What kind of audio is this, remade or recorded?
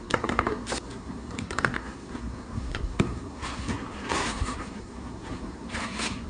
remade